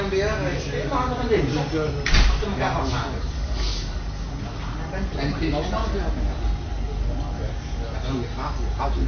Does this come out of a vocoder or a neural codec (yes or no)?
no